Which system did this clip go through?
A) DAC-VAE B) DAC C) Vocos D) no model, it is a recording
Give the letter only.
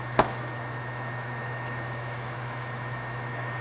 A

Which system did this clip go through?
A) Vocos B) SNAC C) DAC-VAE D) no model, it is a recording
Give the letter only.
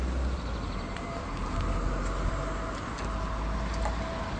D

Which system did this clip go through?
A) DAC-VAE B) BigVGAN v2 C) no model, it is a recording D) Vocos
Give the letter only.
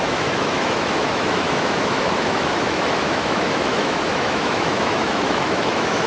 A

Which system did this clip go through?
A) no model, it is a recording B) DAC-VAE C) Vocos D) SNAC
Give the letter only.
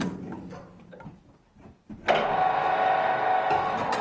A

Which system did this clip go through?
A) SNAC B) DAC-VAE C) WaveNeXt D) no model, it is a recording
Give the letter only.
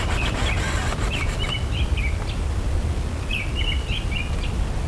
D